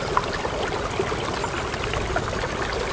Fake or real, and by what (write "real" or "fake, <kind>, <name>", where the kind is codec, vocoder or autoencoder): real